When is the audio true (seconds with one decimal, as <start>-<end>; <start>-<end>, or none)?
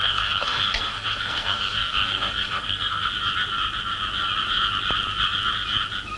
3.1-6.2